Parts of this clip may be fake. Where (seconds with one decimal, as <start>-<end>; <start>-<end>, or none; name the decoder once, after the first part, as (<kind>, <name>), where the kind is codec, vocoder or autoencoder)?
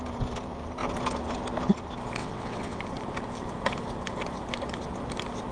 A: 2.2-2.8 (vocoder, WaveNeXt)